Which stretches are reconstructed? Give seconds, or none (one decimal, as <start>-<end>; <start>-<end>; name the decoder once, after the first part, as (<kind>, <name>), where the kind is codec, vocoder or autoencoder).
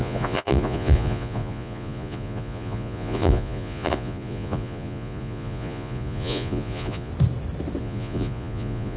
0.0-7.1 (vocoder, Vocos); 7.8-9.0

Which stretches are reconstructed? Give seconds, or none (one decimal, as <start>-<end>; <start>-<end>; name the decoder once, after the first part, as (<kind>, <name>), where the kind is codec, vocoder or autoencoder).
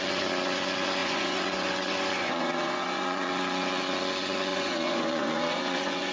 1.0-3.3 (vocoder, Vocos); 4.5-6.1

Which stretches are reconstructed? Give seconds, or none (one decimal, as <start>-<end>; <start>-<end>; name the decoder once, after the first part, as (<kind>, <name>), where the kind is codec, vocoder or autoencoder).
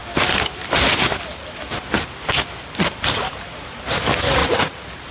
3.3-3.8 (vocoder, Vocos); 4.4-5.1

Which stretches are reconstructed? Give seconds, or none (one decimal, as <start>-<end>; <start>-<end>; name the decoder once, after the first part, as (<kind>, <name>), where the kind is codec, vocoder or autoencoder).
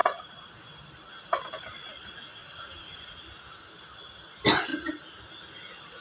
0.0-0.5 (vocoder, Vocos); 2.4-3.2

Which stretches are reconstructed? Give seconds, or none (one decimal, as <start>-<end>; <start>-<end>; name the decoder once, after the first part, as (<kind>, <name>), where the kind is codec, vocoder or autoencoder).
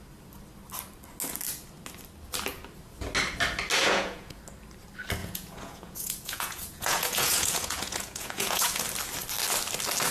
3.8-4.4 (vocoder, Vocos); 5.2-8.8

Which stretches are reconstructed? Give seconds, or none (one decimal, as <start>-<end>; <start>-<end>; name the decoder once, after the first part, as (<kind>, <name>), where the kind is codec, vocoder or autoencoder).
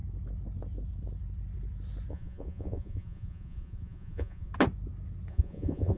2.1-4.5 (vocoder, Vocos); 5.3-6.0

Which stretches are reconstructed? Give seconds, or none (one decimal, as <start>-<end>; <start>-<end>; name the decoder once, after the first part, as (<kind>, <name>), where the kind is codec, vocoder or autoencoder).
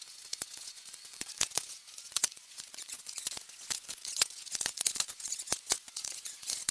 0.0-6.7 (vocoder, Vocos)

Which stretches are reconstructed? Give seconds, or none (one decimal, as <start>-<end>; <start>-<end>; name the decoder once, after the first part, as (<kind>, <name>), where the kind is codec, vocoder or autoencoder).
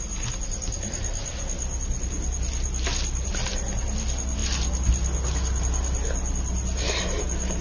none